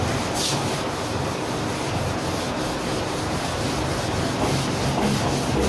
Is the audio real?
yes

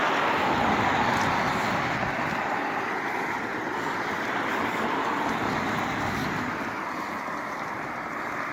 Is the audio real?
yes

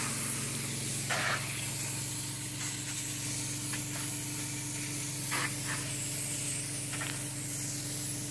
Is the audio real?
yes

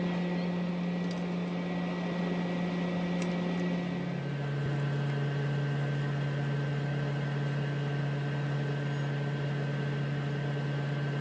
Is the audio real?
yes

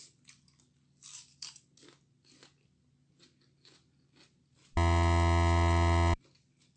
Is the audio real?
yes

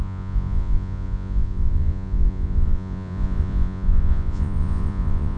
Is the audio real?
no